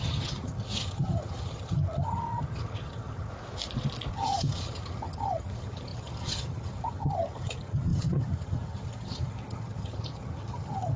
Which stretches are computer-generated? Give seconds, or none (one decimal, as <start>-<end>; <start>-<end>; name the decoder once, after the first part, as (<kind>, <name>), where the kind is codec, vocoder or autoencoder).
0.0-3.3 (vocoder, HiFi-GAN); 4.1-11.0